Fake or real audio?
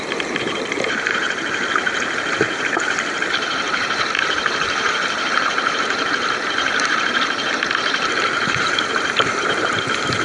fake